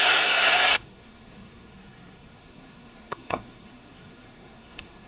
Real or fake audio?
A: fake